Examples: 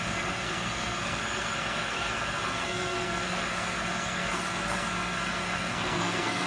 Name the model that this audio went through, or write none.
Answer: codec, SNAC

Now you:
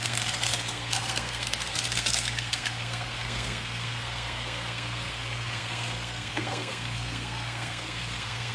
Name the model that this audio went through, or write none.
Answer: codec, SNAC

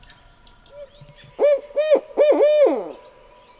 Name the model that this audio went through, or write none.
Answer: none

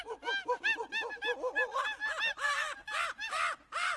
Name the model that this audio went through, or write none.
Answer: none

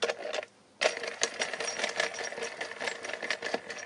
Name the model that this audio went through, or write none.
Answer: none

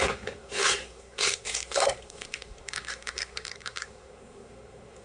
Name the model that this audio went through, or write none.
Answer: codec, SNAC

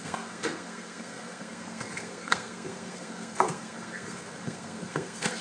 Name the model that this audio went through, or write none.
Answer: codec, SNAC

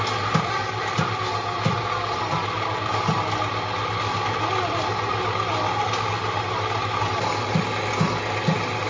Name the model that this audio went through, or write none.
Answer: none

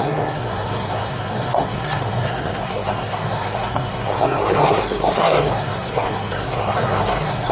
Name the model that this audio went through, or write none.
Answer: codec, SNAC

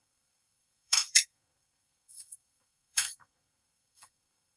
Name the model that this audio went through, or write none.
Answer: codec, SNAC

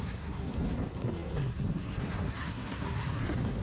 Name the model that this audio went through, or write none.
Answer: codec, SNAC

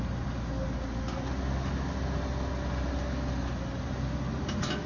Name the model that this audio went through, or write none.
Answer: none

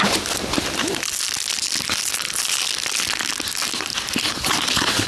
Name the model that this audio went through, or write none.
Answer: none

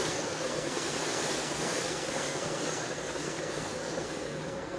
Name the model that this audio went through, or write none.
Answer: codec, SNAC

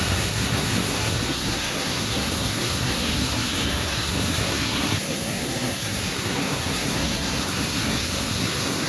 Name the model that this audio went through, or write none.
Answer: codec, SNAC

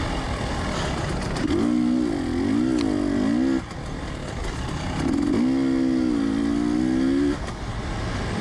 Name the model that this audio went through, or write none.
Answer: none